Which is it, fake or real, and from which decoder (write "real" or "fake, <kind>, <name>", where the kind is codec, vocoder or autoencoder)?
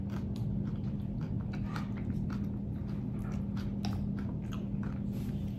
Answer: real